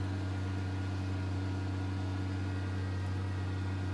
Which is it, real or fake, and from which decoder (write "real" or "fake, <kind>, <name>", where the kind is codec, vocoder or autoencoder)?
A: real